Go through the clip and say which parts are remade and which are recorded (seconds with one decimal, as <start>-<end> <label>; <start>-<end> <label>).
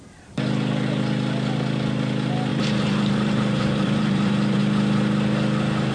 0.0-2.5 recorded; 2.5-4.6 remade; 4.6-5.9 recorded